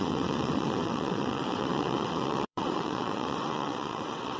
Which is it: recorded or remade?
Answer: remade